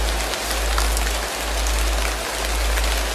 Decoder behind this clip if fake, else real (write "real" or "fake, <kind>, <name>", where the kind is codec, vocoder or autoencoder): real